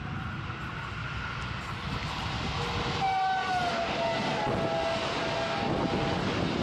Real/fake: real